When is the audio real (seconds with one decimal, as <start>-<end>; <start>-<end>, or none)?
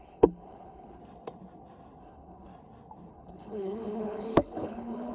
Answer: 1.0-2.0; 2.5-3.1